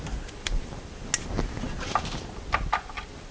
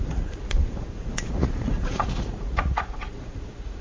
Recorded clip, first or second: first